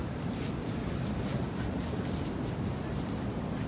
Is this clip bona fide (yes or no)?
yes